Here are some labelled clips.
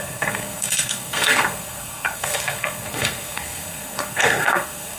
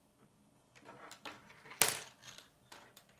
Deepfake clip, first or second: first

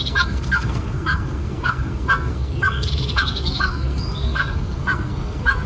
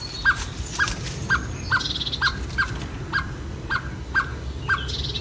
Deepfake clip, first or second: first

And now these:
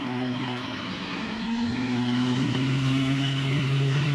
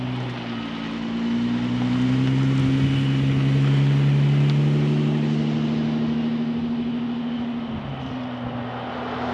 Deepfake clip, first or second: first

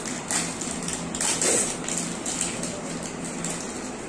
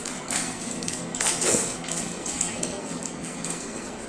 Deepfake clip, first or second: second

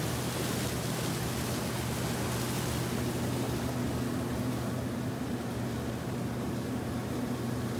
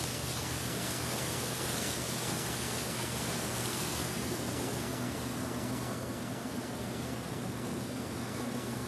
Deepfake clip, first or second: second